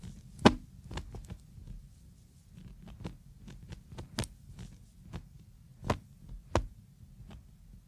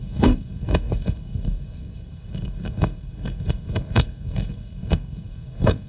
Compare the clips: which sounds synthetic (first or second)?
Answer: second